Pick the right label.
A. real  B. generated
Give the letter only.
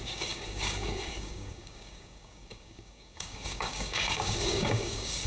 B